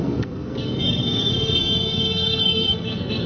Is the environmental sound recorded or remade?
remade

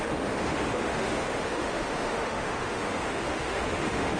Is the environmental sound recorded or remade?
remade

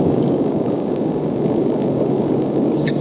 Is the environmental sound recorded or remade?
remade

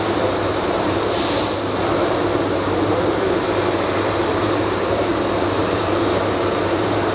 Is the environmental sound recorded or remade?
remade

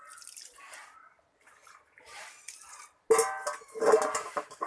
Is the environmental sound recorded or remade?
recorded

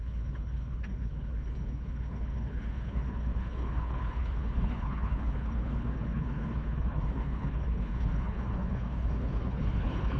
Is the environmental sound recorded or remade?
remade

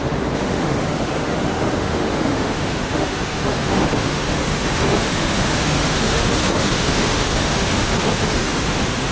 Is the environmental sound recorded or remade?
remade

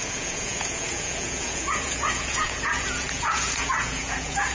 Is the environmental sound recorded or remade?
remade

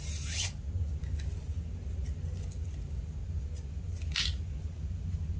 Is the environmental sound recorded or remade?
recorded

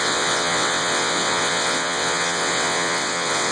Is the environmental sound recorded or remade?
remade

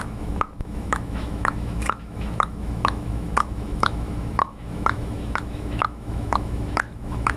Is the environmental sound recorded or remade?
remade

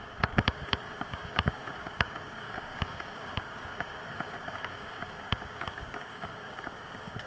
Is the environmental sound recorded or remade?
remade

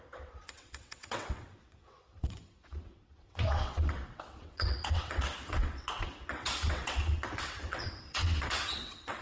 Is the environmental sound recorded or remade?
remade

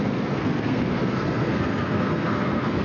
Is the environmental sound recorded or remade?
remade